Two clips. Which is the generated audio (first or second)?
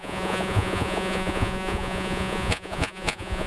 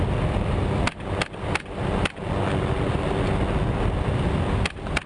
first